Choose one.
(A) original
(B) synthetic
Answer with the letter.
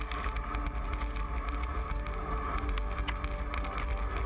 A